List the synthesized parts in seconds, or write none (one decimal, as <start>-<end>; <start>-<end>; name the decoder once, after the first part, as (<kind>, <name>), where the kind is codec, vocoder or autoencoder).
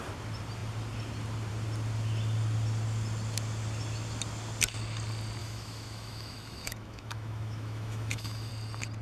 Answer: 5.4-8.5 (autoencoder, DAC-VAE)